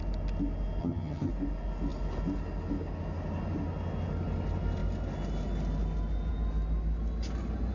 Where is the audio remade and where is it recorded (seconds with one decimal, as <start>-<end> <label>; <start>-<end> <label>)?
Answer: 0.0-0.8 recorded; 0.8-1.3 remade; 1.3-7.7 recorded